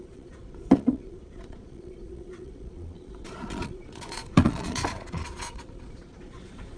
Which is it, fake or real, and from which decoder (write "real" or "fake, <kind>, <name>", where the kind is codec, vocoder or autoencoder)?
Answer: fake, vocoder, Vocos